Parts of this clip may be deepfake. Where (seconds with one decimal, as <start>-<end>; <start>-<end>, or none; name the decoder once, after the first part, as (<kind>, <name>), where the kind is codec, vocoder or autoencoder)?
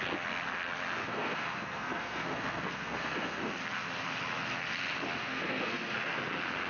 1.0-3.4 (codec, SNAC); 5.2-6.2